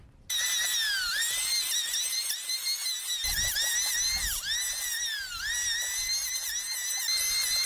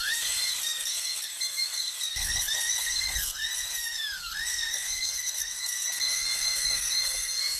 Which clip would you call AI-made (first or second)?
second